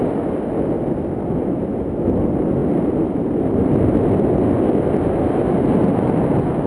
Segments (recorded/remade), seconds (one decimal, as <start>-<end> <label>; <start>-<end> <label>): 0.0-6.7 recorded